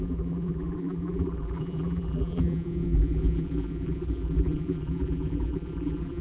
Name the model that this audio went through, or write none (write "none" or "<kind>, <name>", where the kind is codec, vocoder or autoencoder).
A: vocoder, BigVGAN v2